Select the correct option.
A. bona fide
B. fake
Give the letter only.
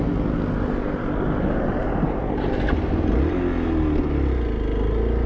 A